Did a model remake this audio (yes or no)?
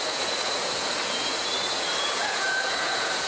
yes